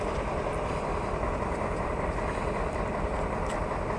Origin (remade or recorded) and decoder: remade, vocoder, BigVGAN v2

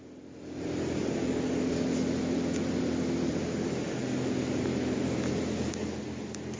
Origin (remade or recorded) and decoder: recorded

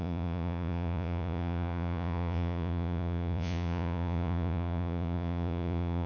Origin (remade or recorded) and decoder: remade, vocoder, Vocos